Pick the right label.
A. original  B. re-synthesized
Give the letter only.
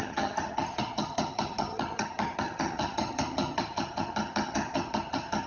B